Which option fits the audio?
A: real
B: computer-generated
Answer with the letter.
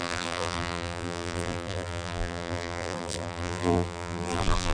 B